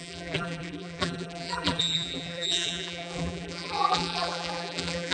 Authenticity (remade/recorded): remade